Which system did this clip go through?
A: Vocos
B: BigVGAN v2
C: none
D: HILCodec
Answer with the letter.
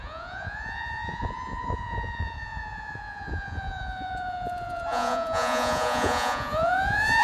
A